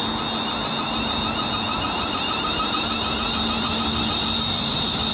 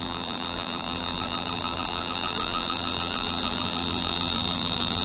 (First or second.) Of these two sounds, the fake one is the second